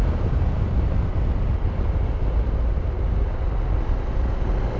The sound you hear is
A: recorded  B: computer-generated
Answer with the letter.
A